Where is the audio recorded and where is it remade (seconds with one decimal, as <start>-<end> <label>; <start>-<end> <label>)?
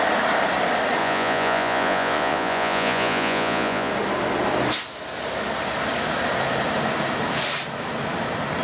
0.0-1.0 recorded; 1.0-3.9 remade; 3.9-8.6 recorded